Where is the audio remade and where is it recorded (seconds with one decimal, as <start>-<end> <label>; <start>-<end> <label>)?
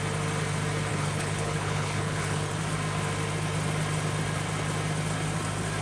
0.0-0.9 recorded; 0.9-2.5 remade; 2.5-5.8 recorded